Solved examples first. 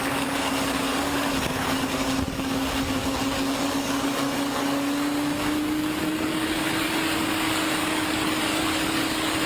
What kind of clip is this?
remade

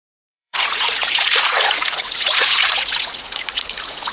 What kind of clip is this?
remade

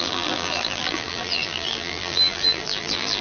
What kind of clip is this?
remade